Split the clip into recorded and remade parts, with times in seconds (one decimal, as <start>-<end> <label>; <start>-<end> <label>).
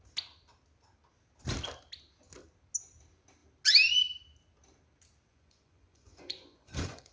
0.0-5.3 recorded; 5.3-7.1 remade